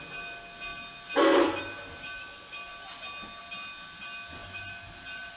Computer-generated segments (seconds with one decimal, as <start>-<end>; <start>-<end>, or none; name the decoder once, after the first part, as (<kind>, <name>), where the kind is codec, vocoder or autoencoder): 4.4-5.4 (vocoder, BigVGAN v2)